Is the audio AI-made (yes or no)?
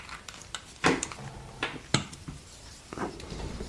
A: no